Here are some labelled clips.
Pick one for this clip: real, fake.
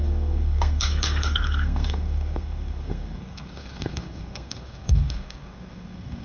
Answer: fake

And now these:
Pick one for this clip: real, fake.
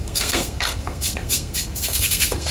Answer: fake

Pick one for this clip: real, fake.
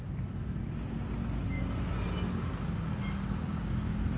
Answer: real